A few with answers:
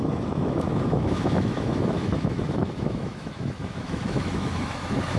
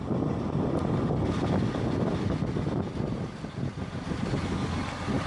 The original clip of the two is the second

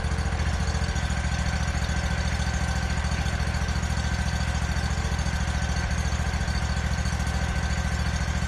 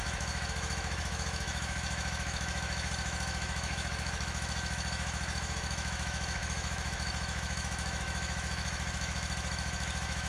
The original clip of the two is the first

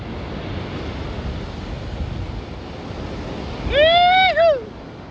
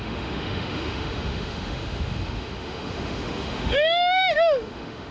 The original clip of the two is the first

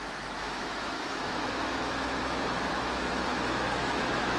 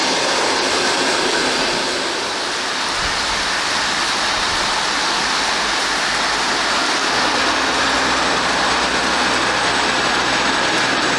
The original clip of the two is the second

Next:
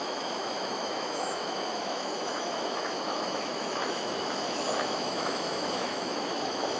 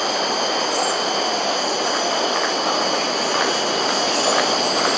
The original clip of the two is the second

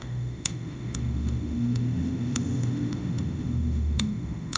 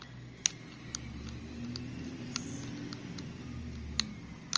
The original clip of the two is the second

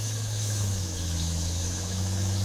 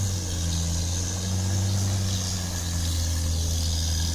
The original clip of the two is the second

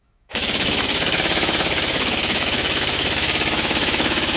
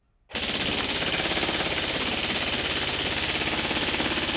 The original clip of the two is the second